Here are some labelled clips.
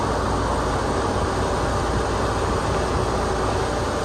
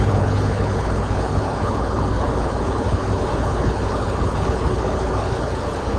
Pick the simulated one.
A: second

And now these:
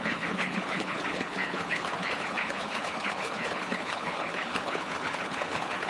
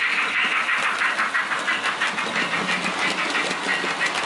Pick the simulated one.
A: first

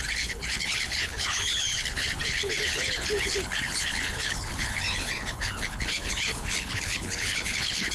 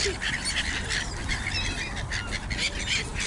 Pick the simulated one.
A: first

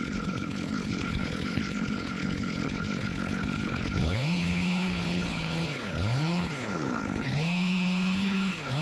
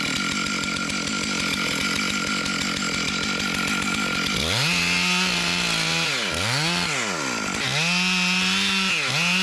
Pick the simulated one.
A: first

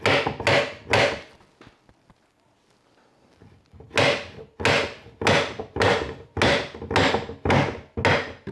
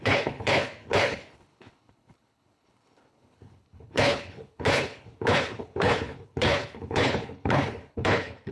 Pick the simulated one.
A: second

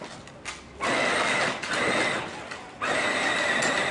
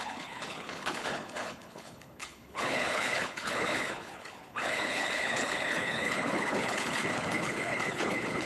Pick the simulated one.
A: second